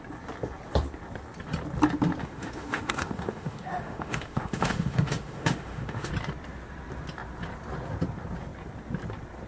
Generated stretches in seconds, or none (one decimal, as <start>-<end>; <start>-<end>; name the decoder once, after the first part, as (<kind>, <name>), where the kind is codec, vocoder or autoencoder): 2.2-6.1 (autoencoder, DAC-VAE)